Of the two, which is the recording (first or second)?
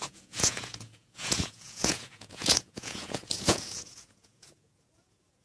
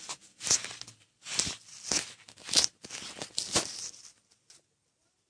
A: second